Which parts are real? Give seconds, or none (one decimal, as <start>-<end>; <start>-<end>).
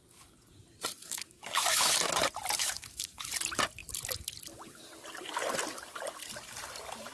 0.0-1.0; 1.9-2.6; 3.3-7.1